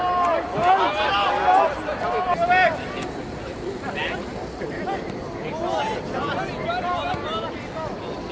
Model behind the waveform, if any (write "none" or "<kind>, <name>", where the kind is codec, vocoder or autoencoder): none